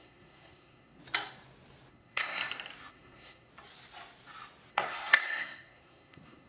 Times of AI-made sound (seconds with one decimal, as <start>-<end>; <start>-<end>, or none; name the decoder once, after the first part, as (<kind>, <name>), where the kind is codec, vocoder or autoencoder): 0.0-1.0 (codec, SNAC); 1.9-2.4; 2.9-3.5; 4.7-6.5